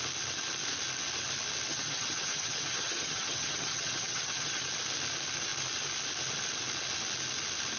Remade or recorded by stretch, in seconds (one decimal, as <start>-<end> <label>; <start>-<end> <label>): 0.0-1.7 recorded; 1.7-4.6 remade; 4.6-7.8 recorded